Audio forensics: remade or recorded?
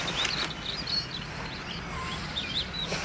recorded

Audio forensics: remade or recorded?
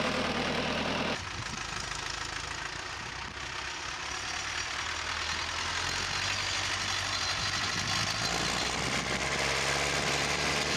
recorded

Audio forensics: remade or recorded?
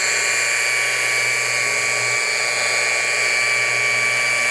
recorded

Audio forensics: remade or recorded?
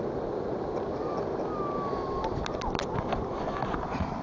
recorded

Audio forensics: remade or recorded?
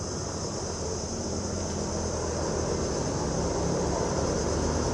recorded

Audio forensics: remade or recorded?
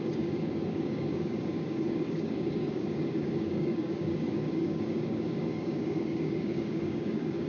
remade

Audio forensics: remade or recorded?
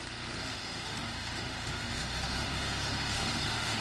remade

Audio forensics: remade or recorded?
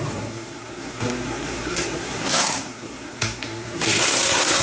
remade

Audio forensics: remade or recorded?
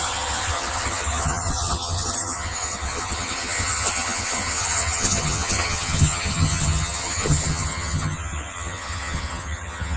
remade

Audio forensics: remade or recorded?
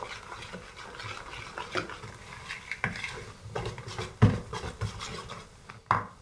recorded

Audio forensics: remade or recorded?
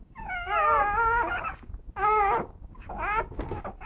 remade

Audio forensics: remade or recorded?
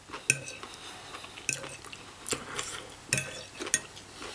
recorded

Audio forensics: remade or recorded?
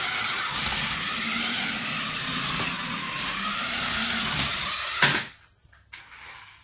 recorded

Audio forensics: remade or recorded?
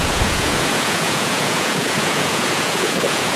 remade